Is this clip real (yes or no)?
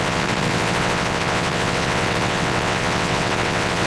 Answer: no